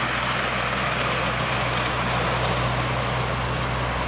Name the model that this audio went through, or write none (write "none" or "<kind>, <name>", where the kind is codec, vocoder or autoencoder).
none